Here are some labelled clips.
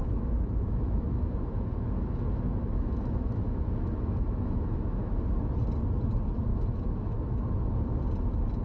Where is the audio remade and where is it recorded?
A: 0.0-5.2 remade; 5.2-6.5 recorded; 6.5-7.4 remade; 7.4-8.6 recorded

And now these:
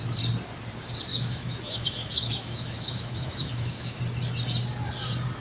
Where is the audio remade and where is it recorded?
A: 0.0-1.1 recorded; 1.1-4.0 remade; 4.0-5.4 recorded

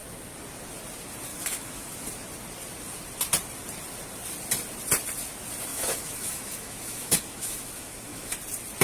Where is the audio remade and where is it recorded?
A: 0.0-1.3 recorded; 1.3-2.0 remade; 2.0-5.7 recorded; 5.7-8.3 remade; 8.3-8.8 recorded

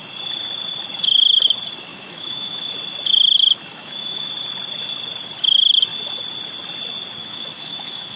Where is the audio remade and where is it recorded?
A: 0.0-1.9 recorded; 1.9-2.7 remade; 2.7-3.7 recorded; 3.7-4.3 remade; 4.3-7.2 recorded; 7.2-8.2 remade